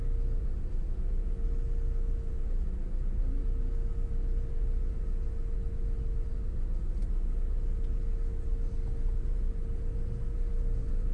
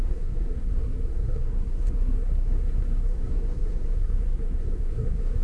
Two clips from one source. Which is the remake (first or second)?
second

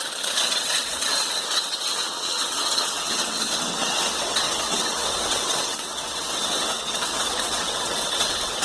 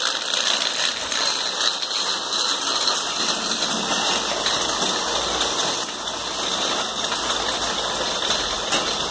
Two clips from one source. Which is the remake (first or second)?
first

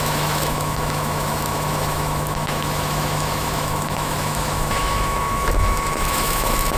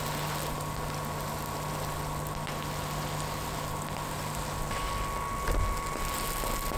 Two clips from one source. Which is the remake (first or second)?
first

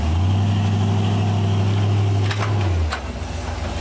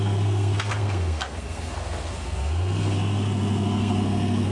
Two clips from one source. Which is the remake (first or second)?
second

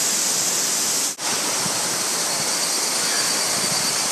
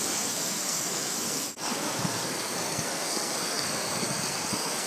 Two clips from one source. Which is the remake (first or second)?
second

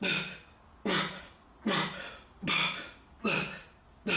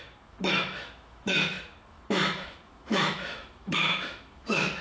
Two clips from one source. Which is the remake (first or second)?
second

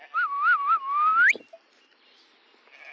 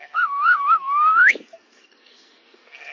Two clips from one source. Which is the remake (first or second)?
second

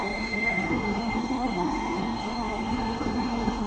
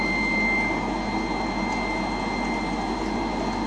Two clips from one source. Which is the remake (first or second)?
first